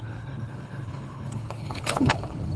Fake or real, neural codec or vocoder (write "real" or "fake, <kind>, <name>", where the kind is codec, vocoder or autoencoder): fake, codec, HILCodec